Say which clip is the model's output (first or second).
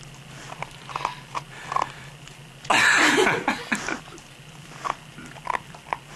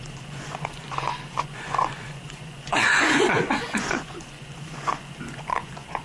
second